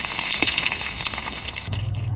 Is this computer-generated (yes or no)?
yes